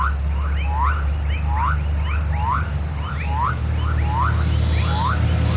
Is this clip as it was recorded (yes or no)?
yes